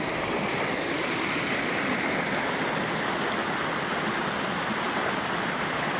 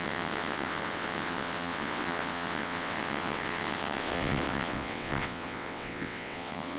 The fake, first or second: second